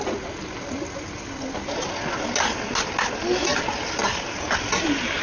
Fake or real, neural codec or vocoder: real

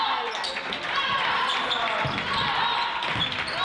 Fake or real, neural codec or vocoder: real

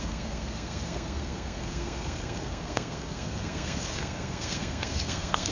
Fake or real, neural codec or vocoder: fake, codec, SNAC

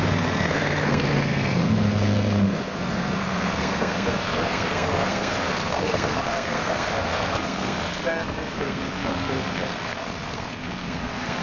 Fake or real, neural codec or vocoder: fake, codec, SNAC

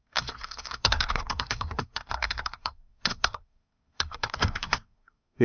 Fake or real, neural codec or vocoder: fake, codec, SNAC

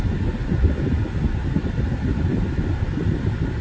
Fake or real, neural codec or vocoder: real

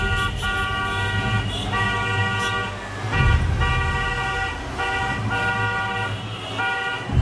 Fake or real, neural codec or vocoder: real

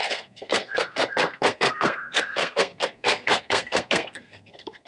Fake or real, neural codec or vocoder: fake, codec, SNAC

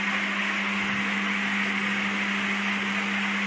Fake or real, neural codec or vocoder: real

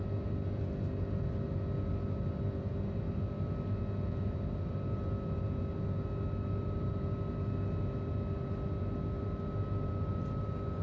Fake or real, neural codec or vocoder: real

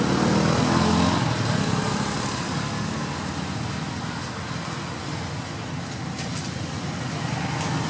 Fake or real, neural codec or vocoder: real